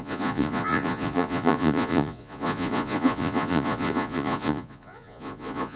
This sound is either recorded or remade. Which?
remade